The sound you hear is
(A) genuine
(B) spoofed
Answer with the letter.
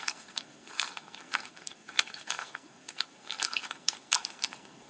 B